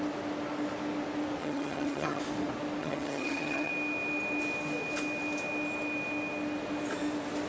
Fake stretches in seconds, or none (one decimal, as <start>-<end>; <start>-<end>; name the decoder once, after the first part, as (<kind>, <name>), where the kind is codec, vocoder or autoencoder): 1.4-2.2 (vocoder, HiFi-GAN); 2.8-3.7